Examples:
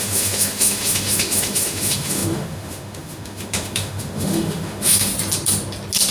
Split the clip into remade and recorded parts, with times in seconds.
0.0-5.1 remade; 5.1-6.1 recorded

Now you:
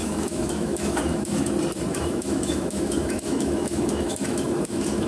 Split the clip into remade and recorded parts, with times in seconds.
0.0-1.5 remade; 1.5-1.9 recorded; 1.9-5.1 remade

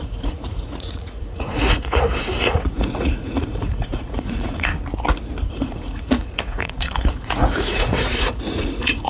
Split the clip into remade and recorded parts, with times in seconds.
0.0-4.7 remade; 4.7-5.5 recorded; 5.5-9.1 remade

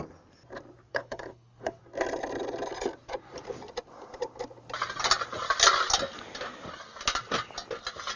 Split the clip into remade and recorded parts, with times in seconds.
0.0-0.9 recorded; 0.9-1.8 remade; 1.8-8.2 recorded

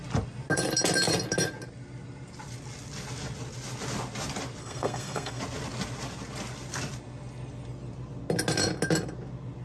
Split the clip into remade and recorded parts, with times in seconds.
0.0-4.6 recorded; 4.6-5.4 remade; 5.4-9.6 recorded

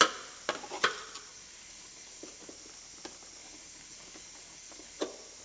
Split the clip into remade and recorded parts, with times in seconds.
0.0-1.3 recorded; 1.3-2.5 remade; 2.5-3.4 recorded; 3.4-5.0 remade; 5.0-5.4 recorded

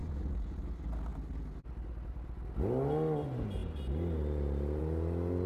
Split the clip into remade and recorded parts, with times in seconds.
0.0-0.6 remade; 0.6-5.5 recorded